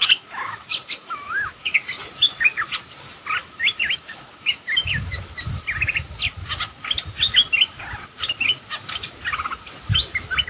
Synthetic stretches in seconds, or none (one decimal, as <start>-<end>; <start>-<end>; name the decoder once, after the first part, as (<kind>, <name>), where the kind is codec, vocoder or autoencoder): 0.0-1.6 (autoencoder, DAC-VAE); 3.4-5.2